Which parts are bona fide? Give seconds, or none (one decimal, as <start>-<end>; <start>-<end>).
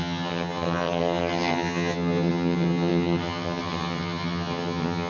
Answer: none